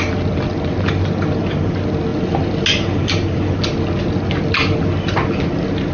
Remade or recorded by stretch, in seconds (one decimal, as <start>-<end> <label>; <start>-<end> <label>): 0.0-5.9 recorded